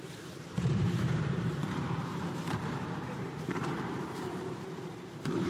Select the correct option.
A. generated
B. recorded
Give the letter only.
A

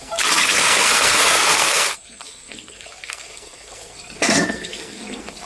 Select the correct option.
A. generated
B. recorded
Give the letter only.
A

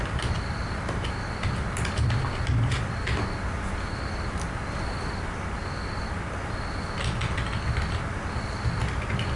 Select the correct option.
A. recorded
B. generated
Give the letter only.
A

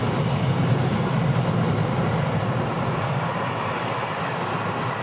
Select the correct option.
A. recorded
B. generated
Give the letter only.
A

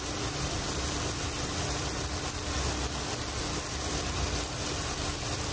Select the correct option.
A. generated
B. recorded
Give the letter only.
B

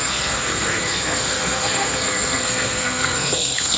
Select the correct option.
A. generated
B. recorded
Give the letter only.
A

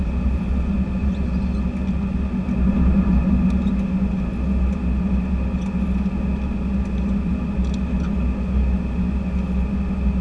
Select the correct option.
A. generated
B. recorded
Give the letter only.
B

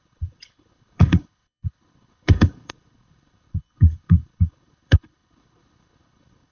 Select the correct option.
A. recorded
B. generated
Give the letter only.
B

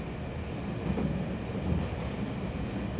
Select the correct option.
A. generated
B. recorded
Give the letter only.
B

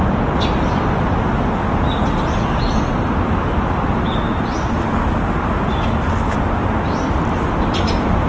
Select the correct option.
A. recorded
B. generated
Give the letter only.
A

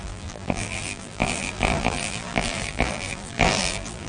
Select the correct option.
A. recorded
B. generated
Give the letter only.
B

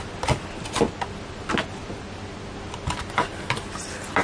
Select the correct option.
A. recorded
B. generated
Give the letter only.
A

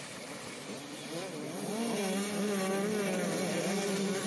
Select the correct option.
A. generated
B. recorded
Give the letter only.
B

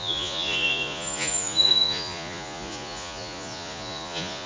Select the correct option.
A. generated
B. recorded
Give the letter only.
A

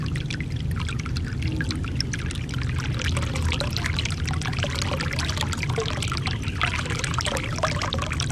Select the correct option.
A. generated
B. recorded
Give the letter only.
B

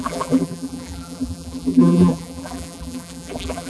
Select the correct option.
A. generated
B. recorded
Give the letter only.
A